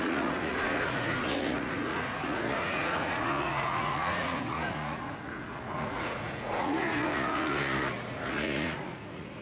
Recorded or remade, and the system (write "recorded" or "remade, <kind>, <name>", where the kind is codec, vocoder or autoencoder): remade, vocoder, Vocos